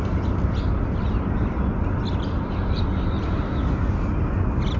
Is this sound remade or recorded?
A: recorded